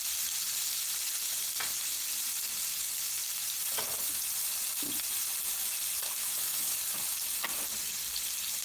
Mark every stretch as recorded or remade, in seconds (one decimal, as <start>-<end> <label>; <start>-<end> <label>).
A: 0.0-6.2 recorded; 6.2-6.8 remade; 6.8-8.6 recorded